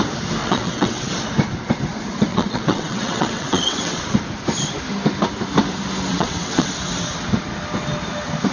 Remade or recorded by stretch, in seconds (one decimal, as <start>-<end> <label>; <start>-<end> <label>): 0.0-0.4 recorded; 0.4-1.1 remade; 1.1-2.3 recorded; 2.3-4.0 remade; 4.0-6.1 recorded; 6.1-6.7 remade; 6.7-8.5 recorded